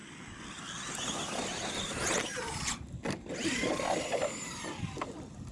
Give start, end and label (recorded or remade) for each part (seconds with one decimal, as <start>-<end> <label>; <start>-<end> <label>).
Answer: 0.0-5.5 recorded